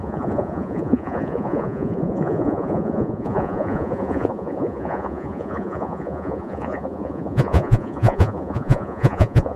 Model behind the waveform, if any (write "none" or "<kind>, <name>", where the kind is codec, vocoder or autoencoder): vocoder, Vocos